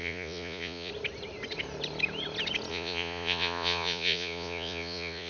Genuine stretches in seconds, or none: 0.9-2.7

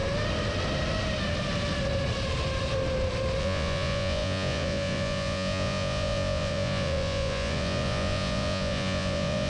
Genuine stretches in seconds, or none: 0.0-3.4

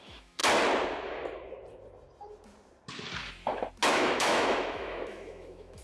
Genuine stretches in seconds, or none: 0.4-3.9

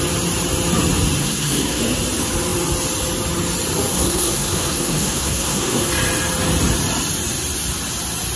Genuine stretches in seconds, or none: 0.0-1.2; 1.8-3.9; 5.9-8.4

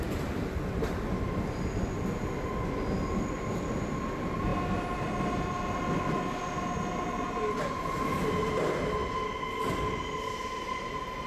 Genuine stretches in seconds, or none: 0.0-11.3

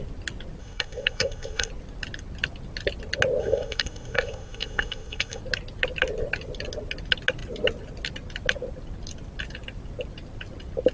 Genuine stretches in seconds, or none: 0.0-0.6; 1.7-3.4; 5.4-10.9